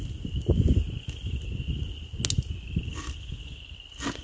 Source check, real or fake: real